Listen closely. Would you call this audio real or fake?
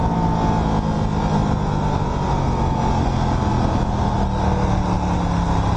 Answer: real